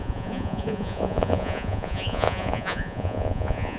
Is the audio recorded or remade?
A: remade